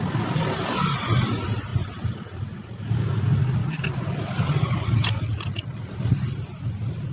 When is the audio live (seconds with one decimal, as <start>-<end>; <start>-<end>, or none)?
0.0-7.1